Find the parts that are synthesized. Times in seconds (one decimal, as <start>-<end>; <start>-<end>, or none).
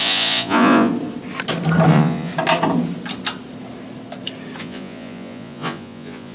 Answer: 0.0-0.9; 1.9-2.3; 4.6-6.3